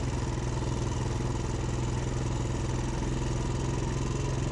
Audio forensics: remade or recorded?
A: recorded